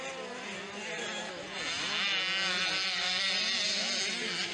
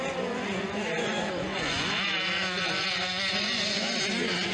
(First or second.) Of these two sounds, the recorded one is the first